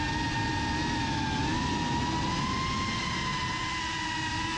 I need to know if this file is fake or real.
real